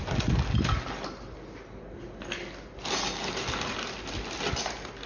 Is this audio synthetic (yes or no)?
no